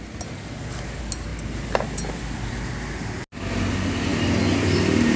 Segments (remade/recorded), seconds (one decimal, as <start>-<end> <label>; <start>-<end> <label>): 0.0-5.2 recorded